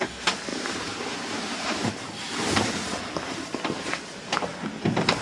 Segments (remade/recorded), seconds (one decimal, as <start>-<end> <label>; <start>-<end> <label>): 0.0-0.5 recorded; 0.5-3.6 remade; 3.6-5.2 recorded